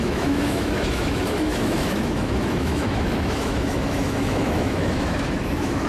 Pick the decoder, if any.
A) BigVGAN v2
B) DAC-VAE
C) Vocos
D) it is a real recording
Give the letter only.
B